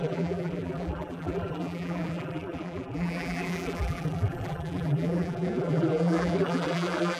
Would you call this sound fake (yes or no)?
yes